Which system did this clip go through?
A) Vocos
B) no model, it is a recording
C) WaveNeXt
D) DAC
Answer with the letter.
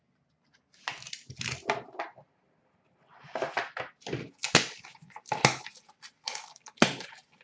B